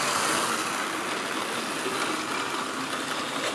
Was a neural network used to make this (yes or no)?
no